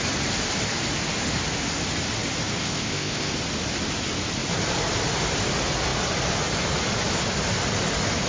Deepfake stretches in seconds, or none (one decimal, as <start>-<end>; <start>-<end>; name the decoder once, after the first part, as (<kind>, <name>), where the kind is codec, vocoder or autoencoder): 2.6-3.3 (codec, ZipCodec)